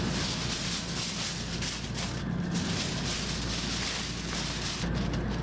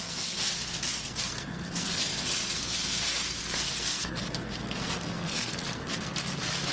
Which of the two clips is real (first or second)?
first